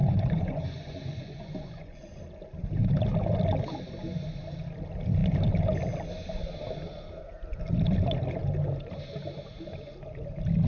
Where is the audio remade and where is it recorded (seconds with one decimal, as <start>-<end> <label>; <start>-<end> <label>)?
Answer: 0.0-2.2 remade; 2.2-10.7 recorded